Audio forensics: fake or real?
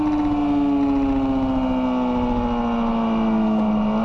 real